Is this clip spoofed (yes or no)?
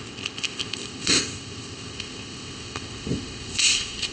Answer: yes